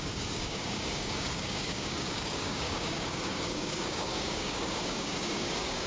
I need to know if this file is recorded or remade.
remade